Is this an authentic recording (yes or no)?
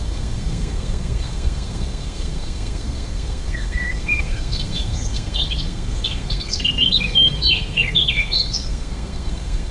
no